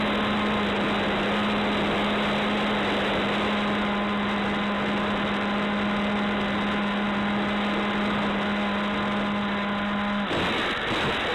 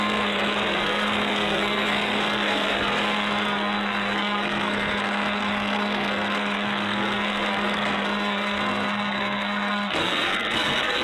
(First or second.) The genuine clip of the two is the first